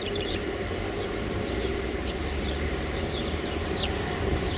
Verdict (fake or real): fake